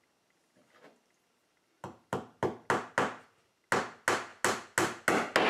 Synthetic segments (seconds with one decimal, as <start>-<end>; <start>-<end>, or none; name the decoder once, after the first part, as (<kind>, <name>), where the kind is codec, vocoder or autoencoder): none